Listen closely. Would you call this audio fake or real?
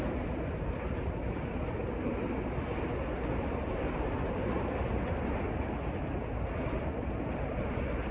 real